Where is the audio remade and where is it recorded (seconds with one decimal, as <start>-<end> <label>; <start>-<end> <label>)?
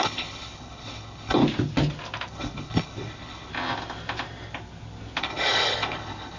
0.0-1.4 remade; 1.4-2.3 recorded; 2.3-3.5 remade; 3.5-5.2 recorded; 5.2-6.4 remade